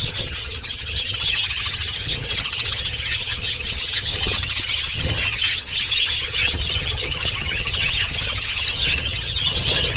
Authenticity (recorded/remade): remade